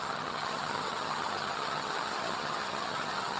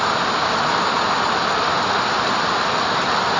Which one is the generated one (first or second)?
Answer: first